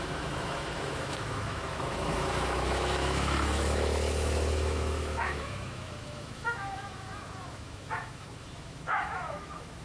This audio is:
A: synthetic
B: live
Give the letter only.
A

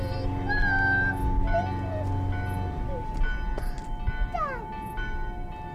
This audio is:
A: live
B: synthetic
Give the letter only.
A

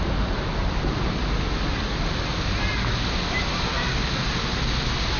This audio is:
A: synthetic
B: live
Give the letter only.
B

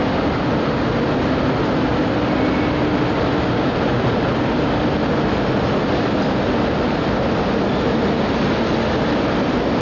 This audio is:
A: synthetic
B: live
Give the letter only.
B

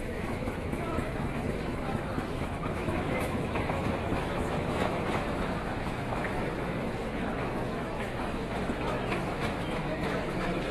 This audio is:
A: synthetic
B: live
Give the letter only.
A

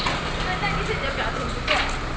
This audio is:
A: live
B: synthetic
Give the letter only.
A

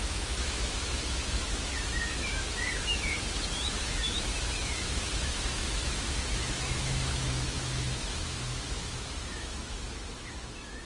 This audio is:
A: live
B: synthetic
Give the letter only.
B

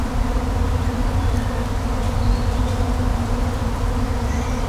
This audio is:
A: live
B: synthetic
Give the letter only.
A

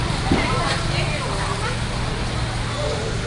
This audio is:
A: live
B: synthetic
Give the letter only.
A